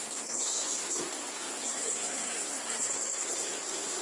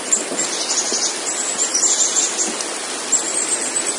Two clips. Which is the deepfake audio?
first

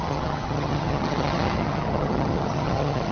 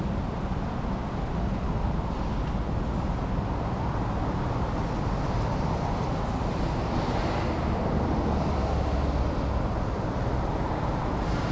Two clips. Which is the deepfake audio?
first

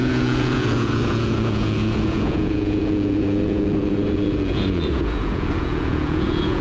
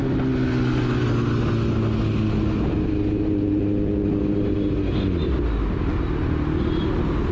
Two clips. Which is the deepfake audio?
first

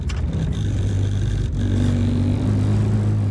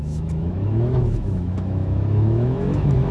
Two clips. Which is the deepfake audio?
second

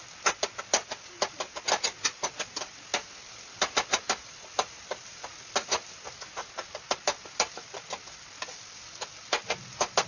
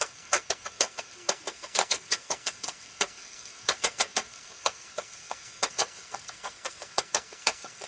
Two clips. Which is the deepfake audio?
second